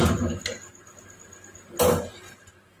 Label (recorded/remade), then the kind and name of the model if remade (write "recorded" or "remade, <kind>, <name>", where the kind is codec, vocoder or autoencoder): recorded